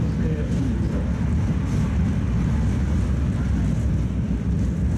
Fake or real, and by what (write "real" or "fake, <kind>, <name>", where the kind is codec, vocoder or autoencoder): real